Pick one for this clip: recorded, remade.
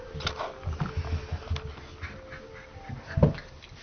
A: recorded